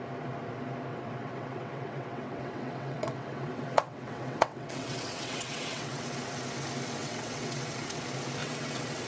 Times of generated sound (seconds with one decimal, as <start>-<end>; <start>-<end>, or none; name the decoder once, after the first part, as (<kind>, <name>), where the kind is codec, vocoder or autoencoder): 0.9-6.0 (vocoder, WaveNeXt); 7.0-8.0; 8.4-9.1